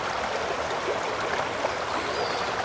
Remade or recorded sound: recorded